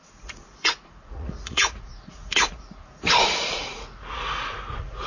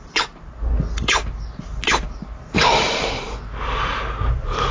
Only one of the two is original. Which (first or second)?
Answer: second